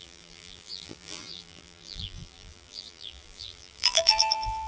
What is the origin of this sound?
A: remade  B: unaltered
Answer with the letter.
A